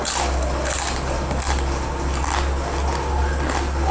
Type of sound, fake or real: real